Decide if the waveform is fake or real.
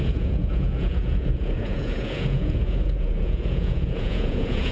fake